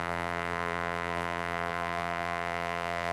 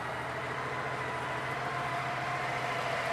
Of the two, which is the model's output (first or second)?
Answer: first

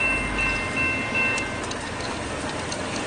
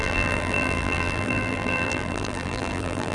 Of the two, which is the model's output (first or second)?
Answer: second